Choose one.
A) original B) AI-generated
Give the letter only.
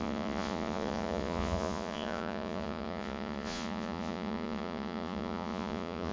B